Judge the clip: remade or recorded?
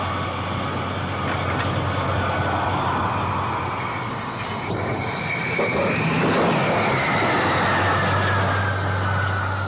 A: recorded